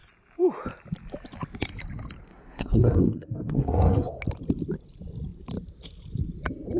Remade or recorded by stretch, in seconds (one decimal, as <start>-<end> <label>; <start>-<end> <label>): 0.0-2.3 recorded; 2.3-4.2 remade; 4.2-6.8 recorded